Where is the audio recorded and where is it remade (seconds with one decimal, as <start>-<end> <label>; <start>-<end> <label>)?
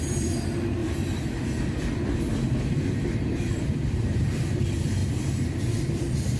0.0-0.8 recorded; 0.8-4.6 remade; 4.6-5.0 recorded; 5.0-6.4 remade